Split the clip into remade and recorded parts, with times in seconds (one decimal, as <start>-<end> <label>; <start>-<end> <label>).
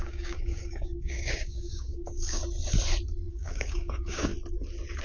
0.0-2.4 remade; 2.4-3.3 recorded; 3.3-4.3 remade; 4.3-5.0 recorded